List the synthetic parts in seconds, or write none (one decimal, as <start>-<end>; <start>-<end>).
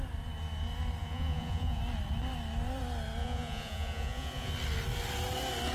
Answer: 1.0-1.8; 3.2-4.5